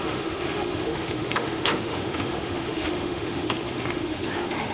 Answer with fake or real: fake